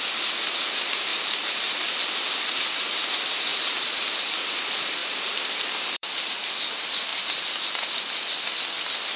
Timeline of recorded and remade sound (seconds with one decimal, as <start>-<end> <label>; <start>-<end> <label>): 0.0-1.1 recorded; 1.1-2.2 remade; 2.2-3.5 recorded; 3.5-4.2 remade; 4.2-5.0 recorded; 5.0-6.3 remade; 6.3-9.2 recorded